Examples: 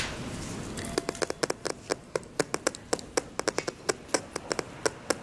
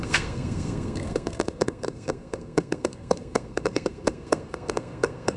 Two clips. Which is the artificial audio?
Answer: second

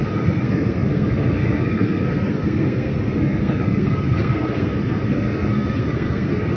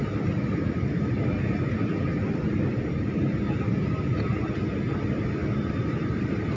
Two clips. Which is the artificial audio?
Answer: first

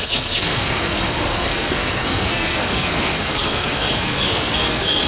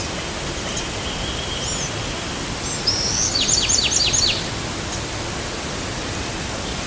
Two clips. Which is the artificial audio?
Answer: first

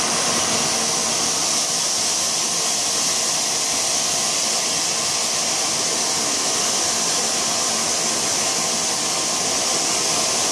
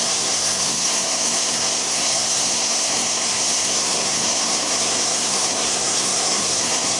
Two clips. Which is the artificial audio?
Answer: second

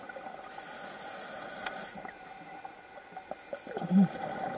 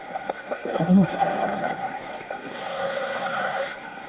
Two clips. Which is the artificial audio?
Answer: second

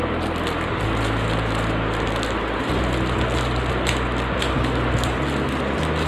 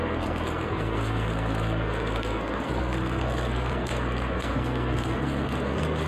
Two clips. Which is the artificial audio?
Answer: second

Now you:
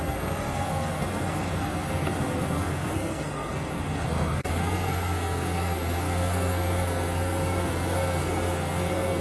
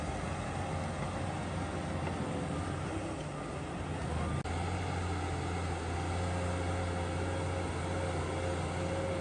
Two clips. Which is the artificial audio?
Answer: first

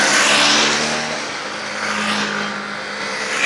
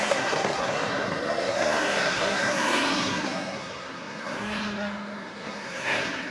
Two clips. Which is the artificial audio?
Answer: second